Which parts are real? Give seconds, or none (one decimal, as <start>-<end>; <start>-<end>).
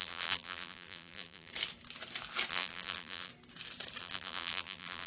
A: 1.5-2.5; 3.3-4.0